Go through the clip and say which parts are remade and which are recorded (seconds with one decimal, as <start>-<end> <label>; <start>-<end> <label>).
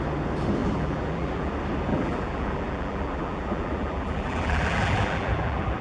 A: 0.0-0.6 recorded; 0.6-1.5 remade; 1.5-1.9 recorded; 1.9-5.8 remade